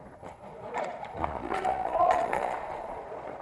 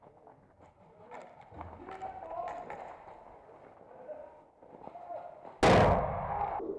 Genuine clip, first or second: second